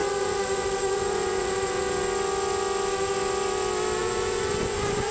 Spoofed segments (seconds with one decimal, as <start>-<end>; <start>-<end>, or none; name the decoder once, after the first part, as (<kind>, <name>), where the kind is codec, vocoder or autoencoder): 0.0-1.8 (vocoder, Vocos); 4.0-5.1